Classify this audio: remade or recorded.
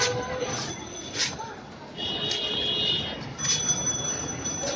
recorded